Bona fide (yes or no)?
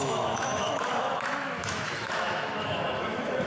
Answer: no